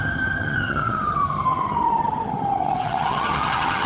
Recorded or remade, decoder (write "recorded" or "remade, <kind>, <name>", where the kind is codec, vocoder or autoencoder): remade, vocoder, HiFi-GAN